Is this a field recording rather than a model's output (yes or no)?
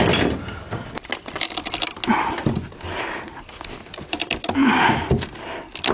yes